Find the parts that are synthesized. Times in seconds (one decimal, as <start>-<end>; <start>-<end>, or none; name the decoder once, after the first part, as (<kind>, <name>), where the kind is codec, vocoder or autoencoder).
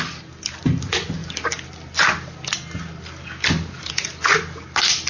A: none